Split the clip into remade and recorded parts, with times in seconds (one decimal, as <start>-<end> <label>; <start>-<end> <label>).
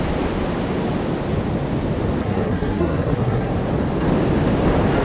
0.0-2.2 recorded; 2.2-3.5 remade; 3.5-5.0 recorded